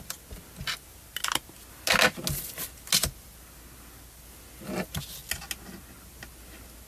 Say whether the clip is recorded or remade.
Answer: recorded